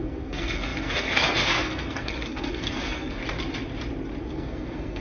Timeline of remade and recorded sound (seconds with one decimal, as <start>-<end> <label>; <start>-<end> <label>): 0.0-3.2 remade; 3.2-4.2 recorded; 4.2-5.0 remade